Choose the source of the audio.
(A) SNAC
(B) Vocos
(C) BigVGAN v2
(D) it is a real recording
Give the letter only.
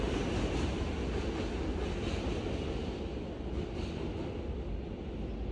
D